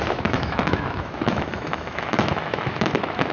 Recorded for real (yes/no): no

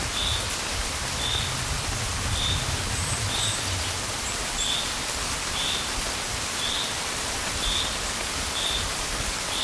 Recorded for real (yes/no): yes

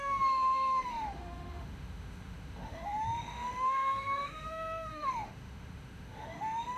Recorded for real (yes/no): no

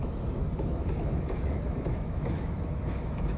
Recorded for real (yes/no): no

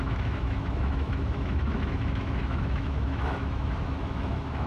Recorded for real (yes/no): no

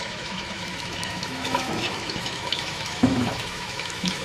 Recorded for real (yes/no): no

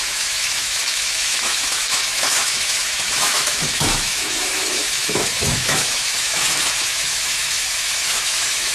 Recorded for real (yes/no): no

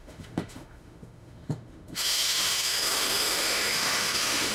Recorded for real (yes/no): no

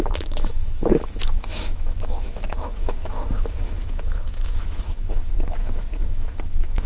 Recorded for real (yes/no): no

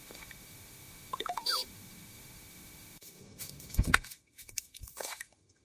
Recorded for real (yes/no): no